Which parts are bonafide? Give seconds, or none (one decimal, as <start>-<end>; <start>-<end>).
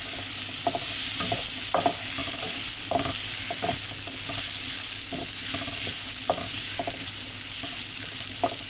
0.0-8.7